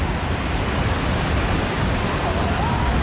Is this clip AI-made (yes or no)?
no